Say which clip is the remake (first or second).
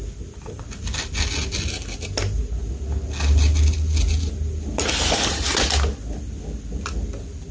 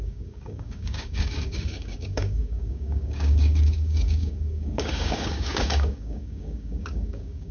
second